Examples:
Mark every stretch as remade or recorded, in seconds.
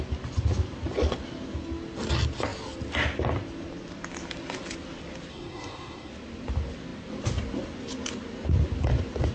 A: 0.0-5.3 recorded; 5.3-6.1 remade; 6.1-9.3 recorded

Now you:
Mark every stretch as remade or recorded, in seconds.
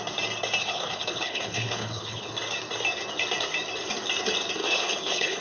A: 0.0-0.6 recorded; 0.6-2.3 remade; 2.3-4.6 recorded; 4.6-5.4 remade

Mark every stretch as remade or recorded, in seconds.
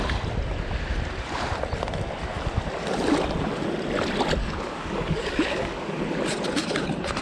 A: 0.0-4.4 recorded; 4.4-6.0 remade; 6.0-7.2 recorded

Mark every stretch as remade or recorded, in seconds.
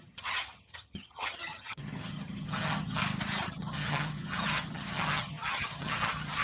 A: 0.0-3.0 remade; 3.0-3.5 recorded; 3.5-6.4 remade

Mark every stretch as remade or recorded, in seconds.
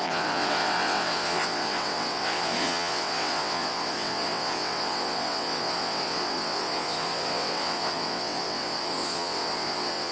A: 0.0-10.1 remade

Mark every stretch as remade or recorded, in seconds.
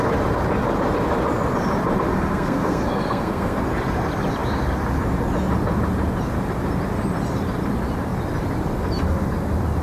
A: 0.0-2.1 recorded; 2.1-3.6 remade; 3.6-9.8 recorded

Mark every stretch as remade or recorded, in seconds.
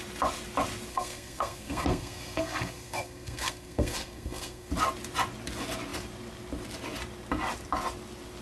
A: 0.0-0.9 recorded; 0.9-4.7 remade; 4.7-8.4 recorded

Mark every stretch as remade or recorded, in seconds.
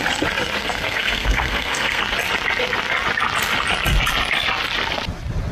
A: 0.0-0.6 recorded; 0.6-2.0 remade; 2.0-5.5 recorded